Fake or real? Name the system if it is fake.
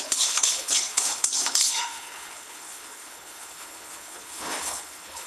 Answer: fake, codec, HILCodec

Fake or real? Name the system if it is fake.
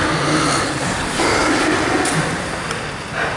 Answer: real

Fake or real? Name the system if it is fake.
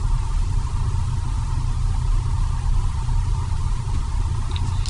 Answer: real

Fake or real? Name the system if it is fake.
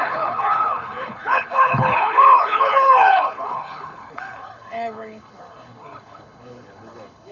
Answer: fake, codec, HILCodec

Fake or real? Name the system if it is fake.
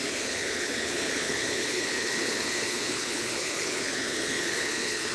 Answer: fake, codec, HILCodec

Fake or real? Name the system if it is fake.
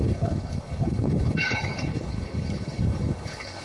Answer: fake, codec, HILCodec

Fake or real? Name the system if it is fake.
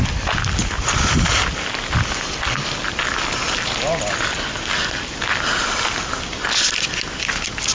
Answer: real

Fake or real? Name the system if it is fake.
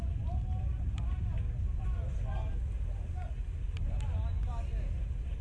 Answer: real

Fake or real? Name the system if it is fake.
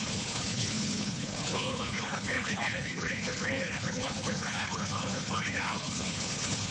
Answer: fake, codec, HILCodec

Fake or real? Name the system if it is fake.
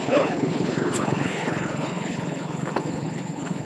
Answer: fake, codec, HILCodec